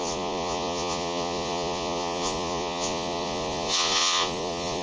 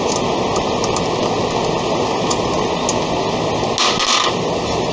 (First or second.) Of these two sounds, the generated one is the first